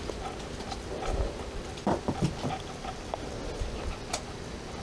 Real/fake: real